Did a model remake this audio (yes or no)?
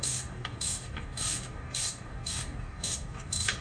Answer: yes